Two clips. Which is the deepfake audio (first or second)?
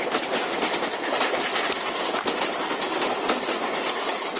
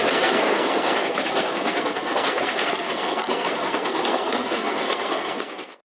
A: second